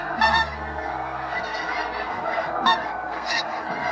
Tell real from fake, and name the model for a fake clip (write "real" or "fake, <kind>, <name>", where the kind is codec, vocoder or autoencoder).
fake, codec, SNAC